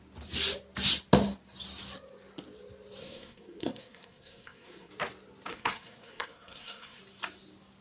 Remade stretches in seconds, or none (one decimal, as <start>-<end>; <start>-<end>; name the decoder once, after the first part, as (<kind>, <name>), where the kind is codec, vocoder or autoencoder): 3.0-4.9 (codec, SNAC); 5.5-7.0

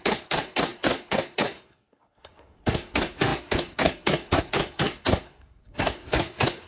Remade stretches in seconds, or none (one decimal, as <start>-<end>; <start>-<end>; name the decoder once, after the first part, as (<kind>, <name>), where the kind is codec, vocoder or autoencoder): 0.0-6.7 (codec, SNAC)

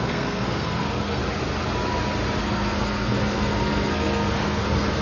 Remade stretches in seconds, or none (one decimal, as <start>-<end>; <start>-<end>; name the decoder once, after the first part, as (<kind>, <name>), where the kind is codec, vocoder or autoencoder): 0.0-1.2 (codec, SNAC); 2.4-5.0